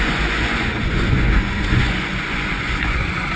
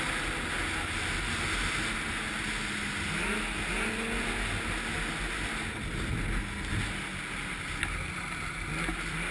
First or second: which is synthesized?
first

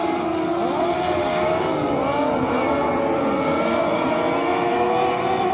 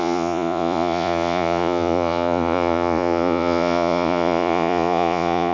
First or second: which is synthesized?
second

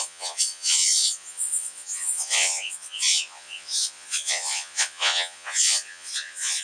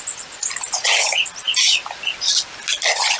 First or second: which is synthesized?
first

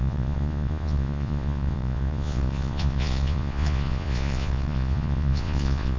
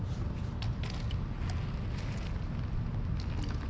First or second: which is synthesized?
first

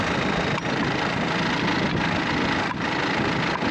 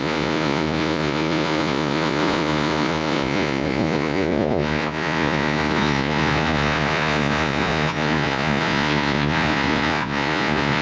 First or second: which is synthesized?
second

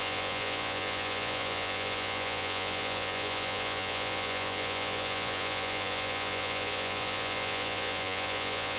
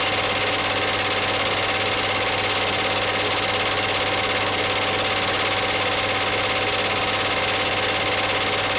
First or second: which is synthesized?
first